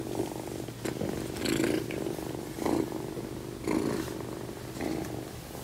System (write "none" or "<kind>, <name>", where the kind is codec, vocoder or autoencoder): none